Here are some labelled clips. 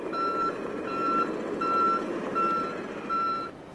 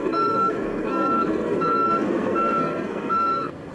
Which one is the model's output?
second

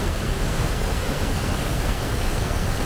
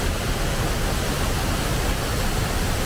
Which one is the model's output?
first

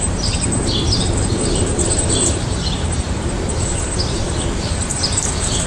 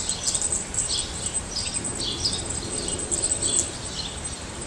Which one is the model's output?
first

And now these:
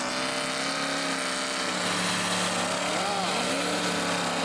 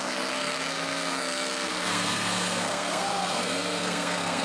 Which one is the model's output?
second